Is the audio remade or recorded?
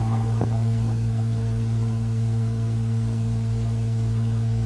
remade